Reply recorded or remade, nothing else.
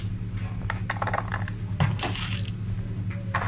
recorded